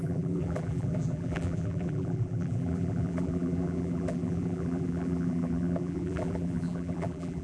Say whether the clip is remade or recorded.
remade